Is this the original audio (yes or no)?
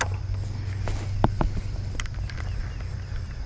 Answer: yes